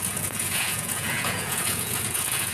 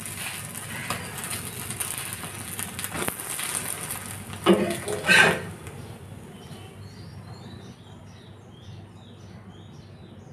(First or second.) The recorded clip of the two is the second